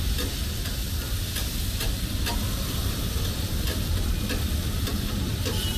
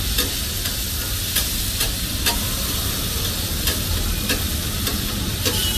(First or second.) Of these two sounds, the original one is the second